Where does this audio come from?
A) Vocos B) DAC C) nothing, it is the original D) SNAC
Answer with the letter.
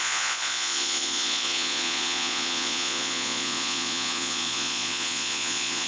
A